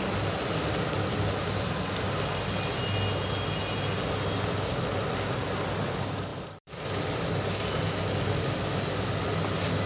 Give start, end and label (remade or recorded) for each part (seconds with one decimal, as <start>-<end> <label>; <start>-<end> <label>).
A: 0.0-6.3 recorded; 6.3-7.5 remade; 7.5-9.9 recorded